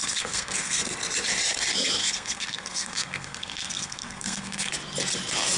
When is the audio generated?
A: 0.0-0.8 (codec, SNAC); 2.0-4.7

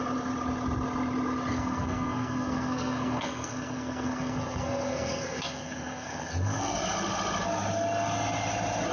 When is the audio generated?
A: 1.5-6.8 (codec, SNAC)

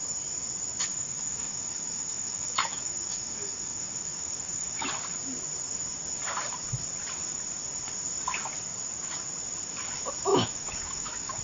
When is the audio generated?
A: 0.9-4.9 (autoencoder, DAC-VAE); 10.3-11.4

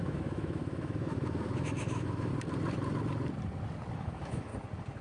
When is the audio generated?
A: 0.0-2.3 (autoencoder, DAC-VAE); 4.0-4.5

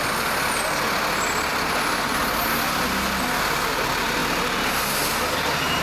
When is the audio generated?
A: none